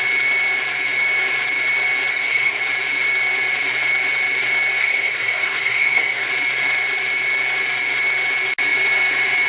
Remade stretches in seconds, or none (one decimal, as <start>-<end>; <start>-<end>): 2.1-2.6; 4.8-6.3